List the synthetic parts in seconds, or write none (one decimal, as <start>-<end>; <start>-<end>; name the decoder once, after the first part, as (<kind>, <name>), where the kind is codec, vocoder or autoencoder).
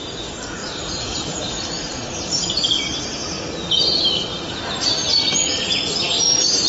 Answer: 0.6-4.6 (vocoder, BigVGAN v2)